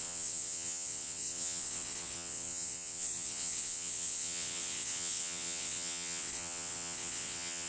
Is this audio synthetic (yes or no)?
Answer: yes